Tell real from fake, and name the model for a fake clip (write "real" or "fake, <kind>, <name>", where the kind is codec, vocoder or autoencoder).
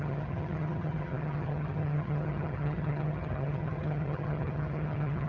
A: fake, vocoder, HiFi-GAN